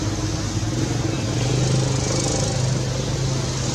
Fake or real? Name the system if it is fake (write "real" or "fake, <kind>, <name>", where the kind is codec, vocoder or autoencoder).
real